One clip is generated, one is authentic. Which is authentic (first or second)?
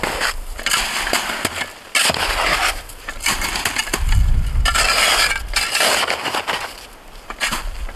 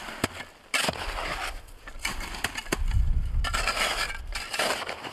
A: first